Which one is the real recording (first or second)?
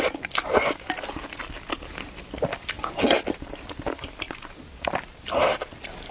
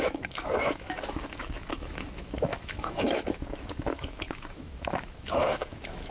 first